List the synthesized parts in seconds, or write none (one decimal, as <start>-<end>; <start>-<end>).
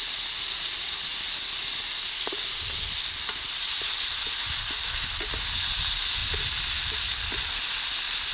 none